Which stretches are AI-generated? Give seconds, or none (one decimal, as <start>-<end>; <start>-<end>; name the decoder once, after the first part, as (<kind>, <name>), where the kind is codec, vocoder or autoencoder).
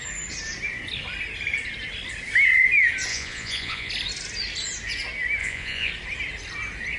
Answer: 3.1-3.9 (vocoder, Vocos); 5.4-5.9